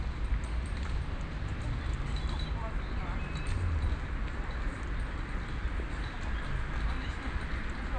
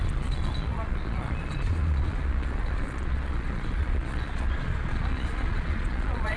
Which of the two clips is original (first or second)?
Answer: first